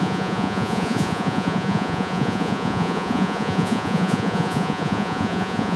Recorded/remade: remade